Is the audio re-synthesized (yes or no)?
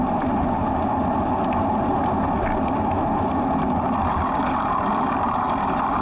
no